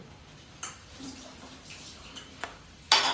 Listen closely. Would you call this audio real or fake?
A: real